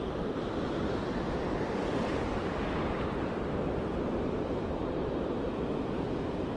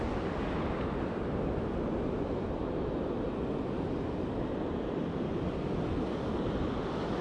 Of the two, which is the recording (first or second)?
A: second